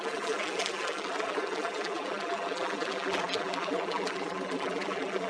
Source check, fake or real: fake